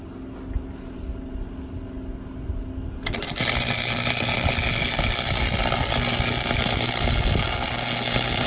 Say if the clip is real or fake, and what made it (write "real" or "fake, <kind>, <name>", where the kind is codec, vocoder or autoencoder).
real